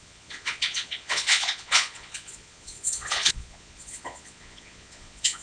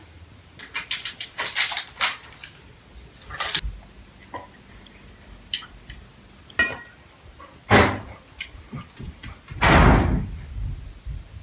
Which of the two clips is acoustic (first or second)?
second